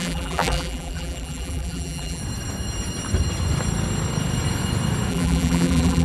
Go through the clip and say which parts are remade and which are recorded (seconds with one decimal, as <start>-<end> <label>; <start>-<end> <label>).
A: 0.0-2.2 remade; 2.2-5.1 recorded; 5.1-6.0 remade